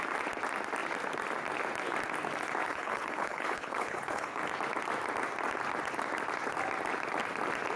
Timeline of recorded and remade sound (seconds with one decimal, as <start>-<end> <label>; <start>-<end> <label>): 0.0-2.6 recorded; 2.6-4.4 remade; 4.4-7.8 recorded